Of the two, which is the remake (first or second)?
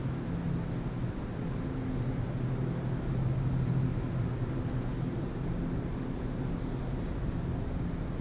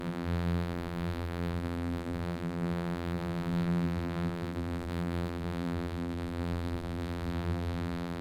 second